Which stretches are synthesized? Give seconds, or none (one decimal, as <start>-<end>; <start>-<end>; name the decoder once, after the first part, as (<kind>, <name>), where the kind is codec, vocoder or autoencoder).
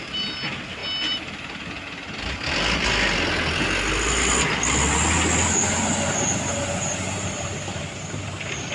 none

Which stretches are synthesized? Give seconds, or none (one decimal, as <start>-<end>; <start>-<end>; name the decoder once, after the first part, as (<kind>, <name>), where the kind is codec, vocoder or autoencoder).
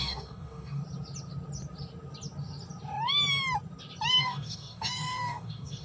0.0-0.8 (codec, DAC); 4.2-5.8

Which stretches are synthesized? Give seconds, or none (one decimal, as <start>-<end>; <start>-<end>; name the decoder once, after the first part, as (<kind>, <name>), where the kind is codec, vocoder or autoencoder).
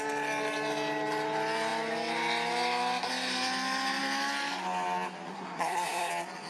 5.3-6.1 (codec, SNAC)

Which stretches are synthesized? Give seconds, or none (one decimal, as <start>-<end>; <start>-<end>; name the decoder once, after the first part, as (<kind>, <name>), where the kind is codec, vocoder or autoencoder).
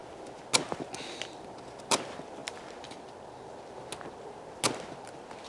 none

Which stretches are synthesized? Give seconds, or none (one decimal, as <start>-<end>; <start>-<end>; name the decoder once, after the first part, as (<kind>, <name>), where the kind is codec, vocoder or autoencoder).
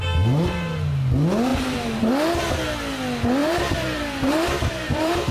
1.5-2.1 (vocoder, BigVGAN v2); 3.4-5.3